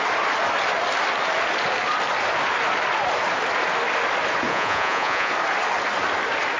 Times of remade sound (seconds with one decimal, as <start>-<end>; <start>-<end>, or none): 4.5-5.3